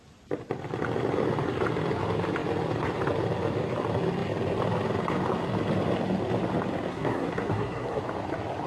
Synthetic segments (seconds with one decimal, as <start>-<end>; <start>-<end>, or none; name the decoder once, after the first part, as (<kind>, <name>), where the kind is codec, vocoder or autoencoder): 6.9-8.0 (codec, SNAC)